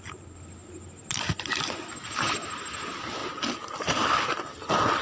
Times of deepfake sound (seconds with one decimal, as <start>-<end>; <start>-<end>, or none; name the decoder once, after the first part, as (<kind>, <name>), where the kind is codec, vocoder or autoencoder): none